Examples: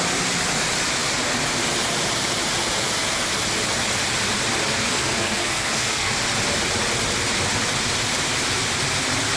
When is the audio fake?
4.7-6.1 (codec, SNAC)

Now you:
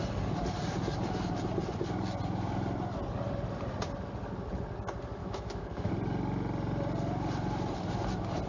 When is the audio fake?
5.2-5.9 (autoencoder, DAC-VAE)

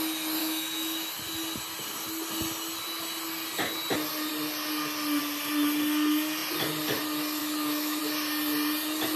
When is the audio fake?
0.4-1.2 (autoencoder, DAC-VAE); 7.4-8.0

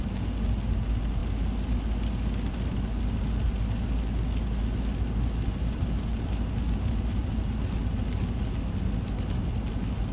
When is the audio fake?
none